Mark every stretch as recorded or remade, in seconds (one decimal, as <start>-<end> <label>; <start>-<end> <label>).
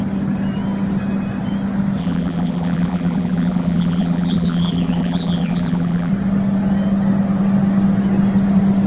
0.0-2.0 recorded; 2.0-6.1 remade; 6.1-8.9 recorded